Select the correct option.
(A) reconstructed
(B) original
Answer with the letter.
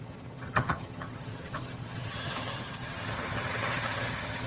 A